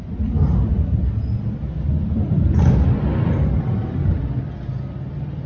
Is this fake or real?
real